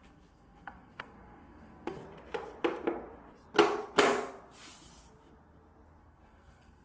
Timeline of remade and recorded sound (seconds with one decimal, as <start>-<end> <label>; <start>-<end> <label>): 0.0-2.0 remade; 2.0-6.0 recorded; 6.0-6.8 remade